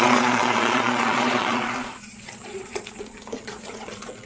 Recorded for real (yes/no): no